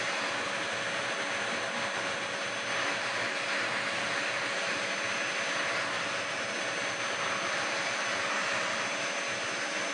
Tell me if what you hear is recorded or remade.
recorded